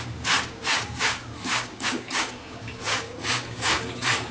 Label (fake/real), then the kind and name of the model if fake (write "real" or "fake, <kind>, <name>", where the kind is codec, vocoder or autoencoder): fake, codec, DAC